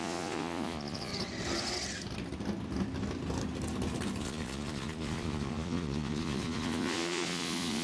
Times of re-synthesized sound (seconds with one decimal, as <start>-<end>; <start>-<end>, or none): 0.0-1.1; 4.2-7.8